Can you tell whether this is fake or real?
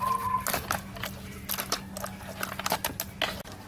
real